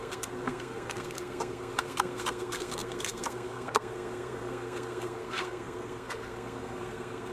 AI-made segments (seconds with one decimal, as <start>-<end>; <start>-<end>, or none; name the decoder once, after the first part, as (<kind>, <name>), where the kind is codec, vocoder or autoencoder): 0.0-7.3 (codec, SNAC)